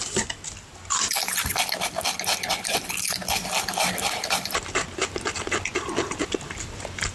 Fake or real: real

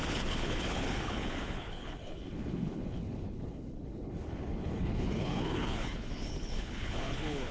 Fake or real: fake